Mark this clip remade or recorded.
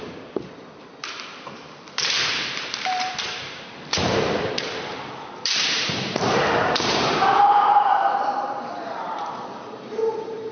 remade